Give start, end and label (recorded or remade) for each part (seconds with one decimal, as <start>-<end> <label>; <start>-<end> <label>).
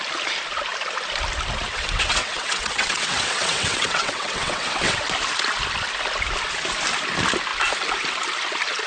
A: 0.0-1.7 recorded; 1.7-5.0 remade; 5.0-8.9 recorded